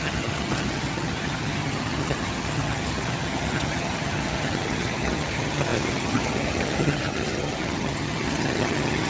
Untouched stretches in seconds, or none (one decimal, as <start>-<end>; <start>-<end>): none